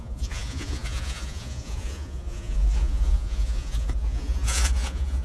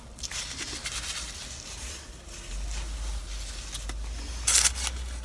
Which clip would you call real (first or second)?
second